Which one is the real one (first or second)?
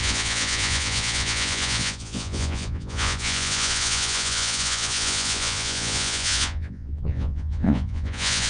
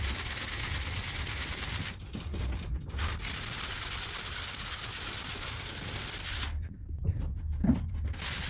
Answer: second